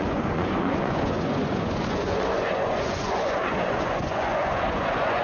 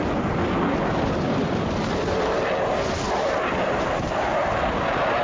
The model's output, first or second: first